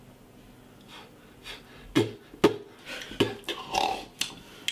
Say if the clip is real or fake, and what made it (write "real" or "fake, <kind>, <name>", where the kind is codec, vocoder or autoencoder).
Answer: real